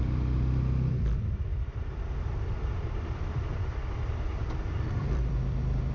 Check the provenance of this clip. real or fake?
fake